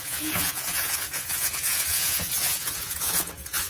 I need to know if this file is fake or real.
fake